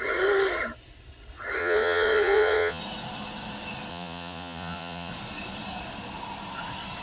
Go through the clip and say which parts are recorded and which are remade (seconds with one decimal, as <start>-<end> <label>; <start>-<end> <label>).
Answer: 0.0-1.6 recorded; 1.6-2.8 remade; 2.8-3.9 recorded; 3.9-5.1 remade; 5.1-7.0 recorded

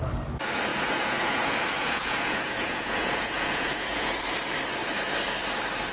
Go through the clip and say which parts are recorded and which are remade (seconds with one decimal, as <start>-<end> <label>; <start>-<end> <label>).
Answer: 0.0-0.7 recorded; 0.7-4.2 remade; 4.2-5.9 recorded

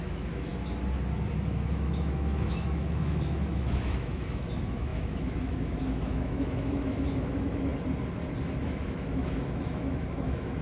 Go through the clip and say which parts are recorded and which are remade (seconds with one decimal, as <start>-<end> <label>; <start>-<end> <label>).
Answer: 0.0-0.5 remade; 0.5-1.3 recorded; 1.3-7.7 remade; 7.7-8.6 recorded; 8.6-10.6 remade

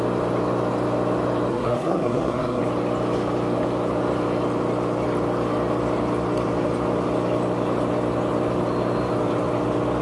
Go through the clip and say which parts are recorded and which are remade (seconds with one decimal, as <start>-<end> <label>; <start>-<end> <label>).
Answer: 0.0-1.5 recorded; 1.5-2.6 remade; 2.6-10.0 recorded

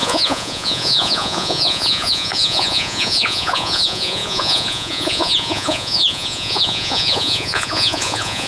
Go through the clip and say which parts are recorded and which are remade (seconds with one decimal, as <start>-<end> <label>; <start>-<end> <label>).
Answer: 0.0-8.5 remade

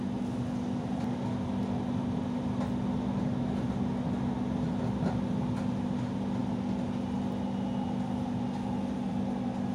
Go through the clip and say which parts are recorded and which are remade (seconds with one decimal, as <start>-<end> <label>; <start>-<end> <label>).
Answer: 0.0-9.7 recorded

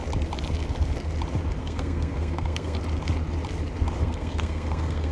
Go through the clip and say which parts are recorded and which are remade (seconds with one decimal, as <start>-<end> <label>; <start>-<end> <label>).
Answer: 0.0-1.6 recorded; 1.6-2.8 remade; 2.8-4.0 recorded; 4.0-5.1 remade